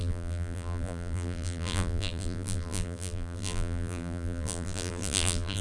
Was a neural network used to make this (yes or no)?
yes